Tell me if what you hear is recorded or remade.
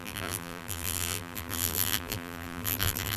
remade